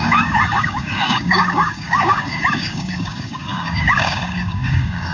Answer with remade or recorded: remade